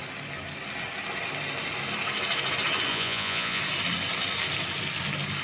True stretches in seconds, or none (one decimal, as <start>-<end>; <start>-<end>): 0.0-2.9; 3.6-5.4